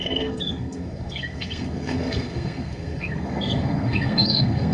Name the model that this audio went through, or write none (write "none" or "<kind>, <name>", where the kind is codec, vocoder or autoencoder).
codec, SNAC